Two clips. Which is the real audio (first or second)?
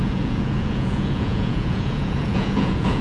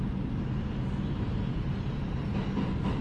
second